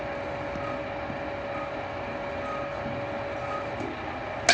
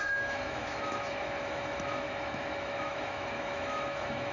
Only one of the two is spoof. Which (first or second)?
second